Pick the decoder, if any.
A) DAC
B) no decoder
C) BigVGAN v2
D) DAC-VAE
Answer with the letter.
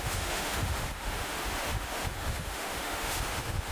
D